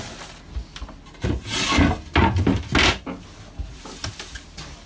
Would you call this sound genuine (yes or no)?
yes